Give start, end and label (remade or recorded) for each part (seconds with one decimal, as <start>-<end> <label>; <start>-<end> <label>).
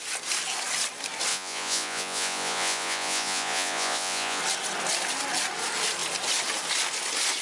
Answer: 0.0-1.3 recorded; 1.3-4.4 remade; 4.4-7.4 recorded